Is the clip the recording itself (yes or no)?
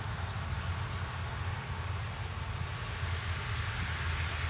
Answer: yes